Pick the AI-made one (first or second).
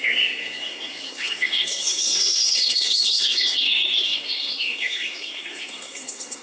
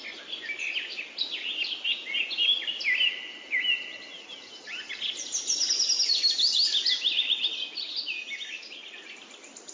first